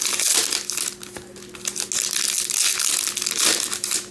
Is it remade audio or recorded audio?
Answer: recorded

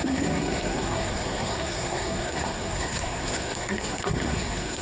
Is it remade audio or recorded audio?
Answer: remade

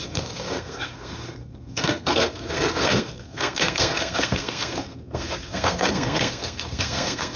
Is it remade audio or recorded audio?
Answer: remade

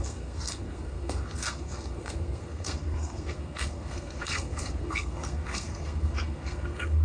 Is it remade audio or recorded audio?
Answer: remade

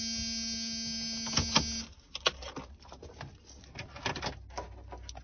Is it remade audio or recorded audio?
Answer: recorded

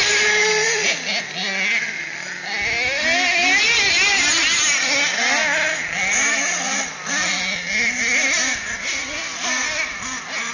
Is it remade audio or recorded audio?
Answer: recorded